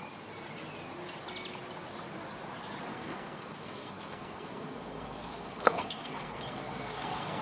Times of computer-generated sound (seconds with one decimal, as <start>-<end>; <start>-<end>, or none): 2.9-7.4